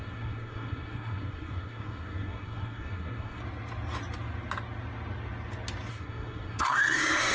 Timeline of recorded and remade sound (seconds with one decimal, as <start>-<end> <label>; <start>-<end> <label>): 0.0-3.4 remade; 3.4-5.9 recorded; 5.9-7.3 remade